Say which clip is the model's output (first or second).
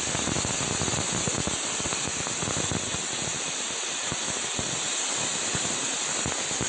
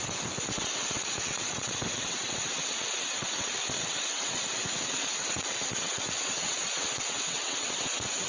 second